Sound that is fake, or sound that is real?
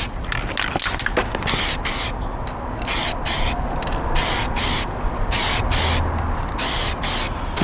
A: real